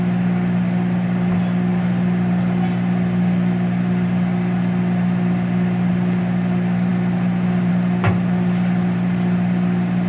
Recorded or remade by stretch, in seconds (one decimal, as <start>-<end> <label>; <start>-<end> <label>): 0.0-10.1 recorded